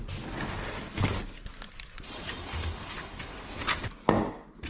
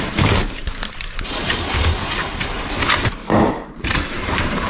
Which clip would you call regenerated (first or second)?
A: second